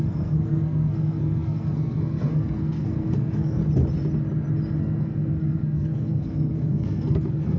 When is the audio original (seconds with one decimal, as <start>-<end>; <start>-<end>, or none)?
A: 3.6-4.8